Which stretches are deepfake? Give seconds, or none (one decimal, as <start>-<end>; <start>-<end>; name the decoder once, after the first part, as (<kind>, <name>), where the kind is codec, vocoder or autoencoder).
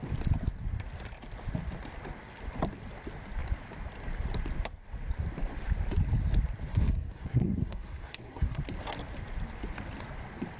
6.7-8.6 (codec, SNAC)